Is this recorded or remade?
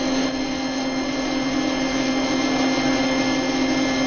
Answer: recorded